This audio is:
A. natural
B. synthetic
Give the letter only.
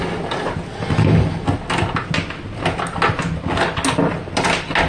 A